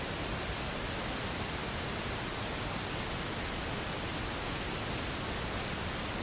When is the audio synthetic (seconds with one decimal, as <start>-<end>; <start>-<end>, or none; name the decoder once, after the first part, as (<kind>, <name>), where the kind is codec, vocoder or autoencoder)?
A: none